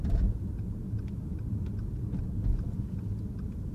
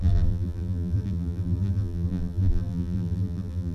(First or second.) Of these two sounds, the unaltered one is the first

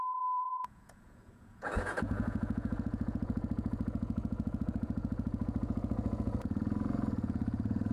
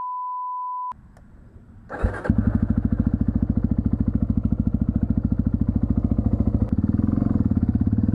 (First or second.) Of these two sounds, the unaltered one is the second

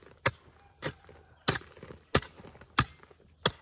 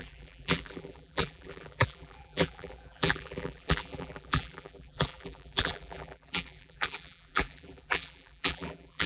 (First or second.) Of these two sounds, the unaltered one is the first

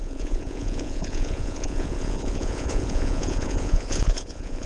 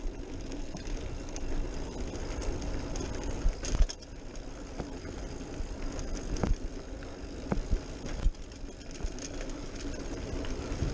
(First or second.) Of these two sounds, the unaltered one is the second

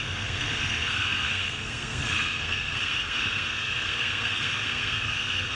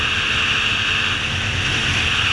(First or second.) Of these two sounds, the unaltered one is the second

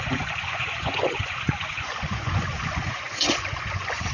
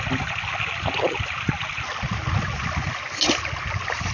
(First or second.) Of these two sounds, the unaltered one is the second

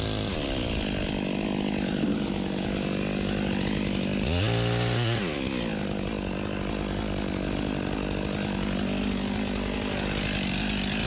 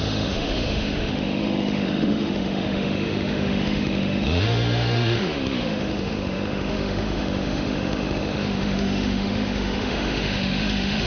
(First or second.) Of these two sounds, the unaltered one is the first